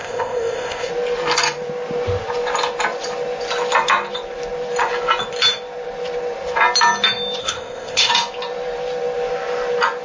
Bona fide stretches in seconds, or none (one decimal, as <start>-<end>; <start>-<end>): 0.9-7.4; 8.1-10.0